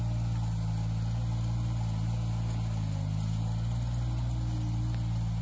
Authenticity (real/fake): real